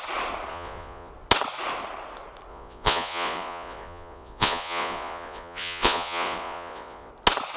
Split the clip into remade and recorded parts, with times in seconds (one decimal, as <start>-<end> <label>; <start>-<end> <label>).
0.0-0.5 recorded; 0.5-1.1 remade; 1.1-2.5 recorded; 2.5-7.1 remade; 7.1-7.6 recorded